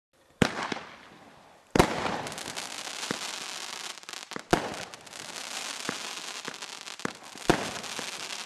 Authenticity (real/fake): real